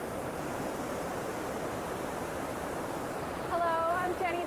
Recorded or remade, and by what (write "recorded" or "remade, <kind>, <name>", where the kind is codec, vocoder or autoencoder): remade, vocoder, BigVGAN v2